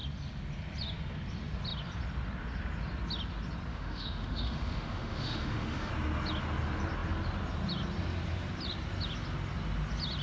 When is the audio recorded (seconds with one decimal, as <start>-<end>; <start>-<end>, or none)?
0.0-3.7; 5.9-10.2